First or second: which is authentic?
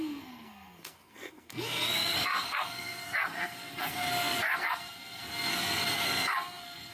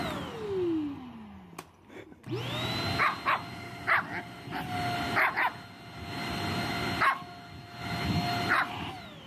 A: second